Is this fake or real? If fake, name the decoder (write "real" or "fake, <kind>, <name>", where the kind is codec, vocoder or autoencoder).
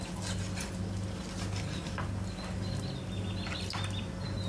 real